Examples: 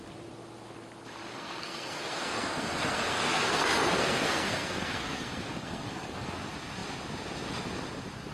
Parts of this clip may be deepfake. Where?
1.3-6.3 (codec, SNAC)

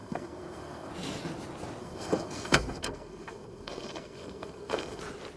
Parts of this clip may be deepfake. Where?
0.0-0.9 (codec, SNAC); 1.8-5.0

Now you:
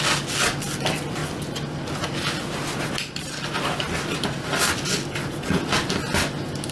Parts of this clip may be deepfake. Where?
none